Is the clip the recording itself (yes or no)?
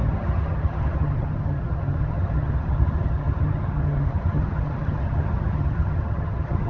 no